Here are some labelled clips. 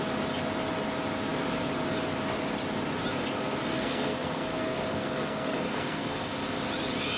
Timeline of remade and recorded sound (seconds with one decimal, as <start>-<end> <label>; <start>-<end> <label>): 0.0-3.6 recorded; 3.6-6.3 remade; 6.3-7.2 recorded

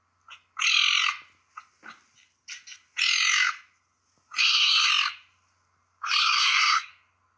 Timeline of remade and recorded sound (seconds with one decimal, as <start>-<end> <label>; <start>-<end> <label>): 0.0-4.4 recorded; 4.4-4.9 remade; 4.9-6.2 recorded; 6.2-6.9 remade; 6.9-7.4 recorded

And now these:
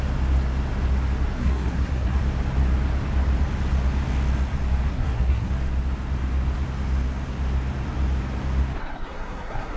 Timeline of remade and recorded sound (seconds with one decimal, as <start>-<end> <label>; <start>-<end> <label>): 0.0-1.4 recorded; 1.4-2.2 remade; 2.2-4.9 recorded; 4.9-5.5 remade; 5.5-8.8 recorded; 8.8-9.8 remade

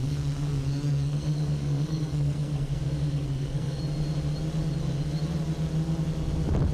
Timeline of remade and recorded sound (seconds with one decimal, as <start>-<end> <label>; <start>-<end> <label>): 0.0-3.8 remade; 3.8-6.7 recorded

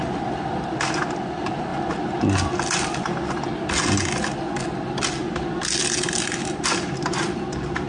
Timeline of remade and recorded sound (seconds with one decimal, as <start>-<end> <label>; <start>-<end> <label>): 0.0-7.9 recorded

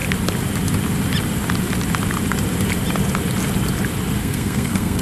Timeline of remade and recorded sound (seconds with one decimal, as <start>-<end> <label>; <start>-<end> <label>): 0.0-4.2 recorded; 4.2-5.0 remade